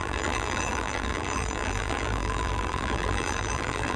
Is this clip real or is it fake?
fake